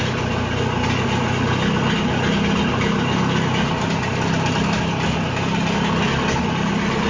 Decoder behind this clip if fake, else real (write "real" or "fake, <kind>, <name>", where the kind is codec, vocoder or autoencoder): real